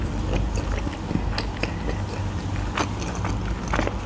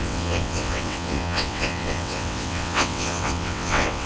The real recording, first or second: first